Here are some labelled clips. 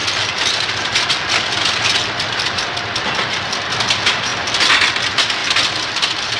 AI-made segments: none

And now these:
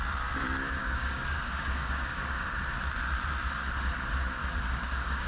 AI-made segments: 0.8-2.5 (codec, DAC); 4.4-5.3

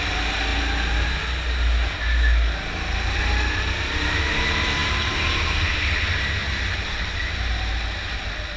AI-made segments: none

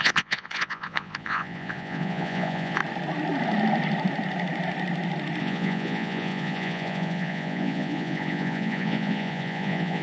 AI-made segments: 0.0-2.8 (vocoder, Vocos); 5.4-10.0

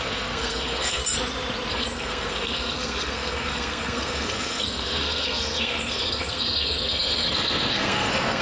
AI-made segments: 0.0-1.0 (codec, SNAC); 1.7-8.4